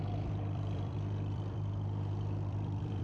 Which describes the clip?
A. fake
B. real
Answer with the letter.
A